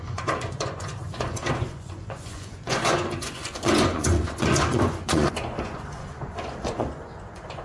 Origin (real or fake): fake